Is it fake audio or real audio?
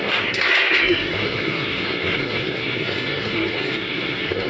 fake